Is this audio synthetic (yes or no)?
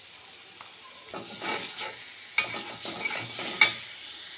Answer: no